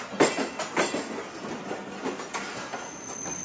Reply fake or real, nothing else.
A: real